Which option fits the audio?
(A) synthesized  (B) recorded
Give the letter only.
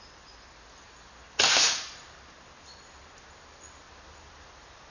B